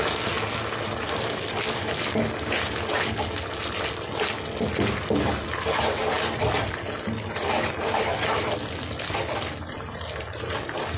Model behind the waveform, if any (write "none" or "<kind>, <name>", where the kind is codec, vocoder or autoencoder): none